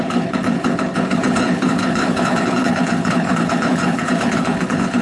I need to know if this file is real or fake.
fake